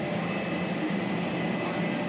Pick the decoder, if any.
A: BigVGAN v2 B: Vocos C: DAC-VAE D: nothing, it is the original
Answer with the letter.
D